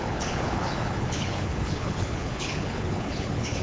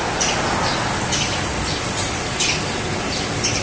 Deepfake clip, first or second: first